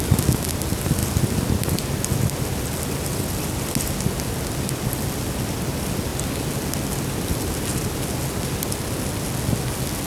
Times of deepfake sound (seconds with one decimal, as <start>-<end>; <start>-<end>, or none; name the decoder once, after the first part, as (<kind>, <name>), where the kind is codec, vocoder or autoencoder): none